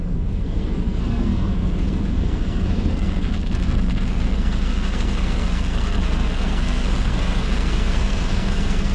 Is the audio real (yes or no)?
no